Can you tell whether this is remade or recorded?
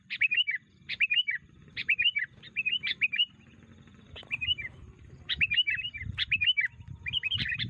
remade